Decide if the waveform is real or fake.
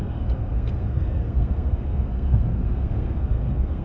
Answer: fake